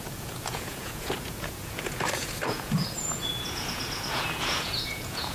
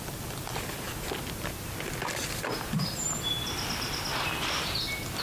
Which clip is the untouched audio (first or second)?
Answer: second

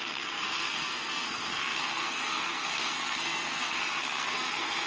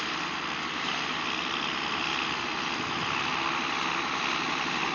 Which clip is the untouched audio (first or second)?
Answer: second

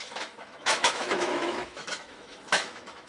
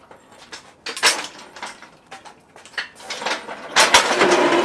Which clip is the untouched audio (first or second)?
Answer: second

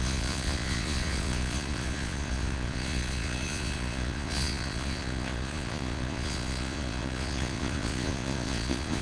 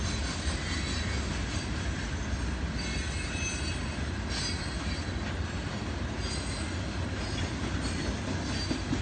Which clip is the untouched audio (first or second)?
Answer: second